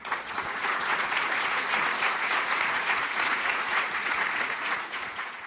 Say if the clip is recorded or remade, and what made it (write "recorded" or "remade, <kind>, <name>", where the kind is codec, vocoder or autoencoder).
remade, vocoder, Vocos